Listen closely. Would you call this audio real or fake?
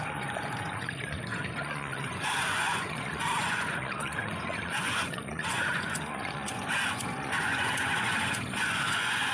fake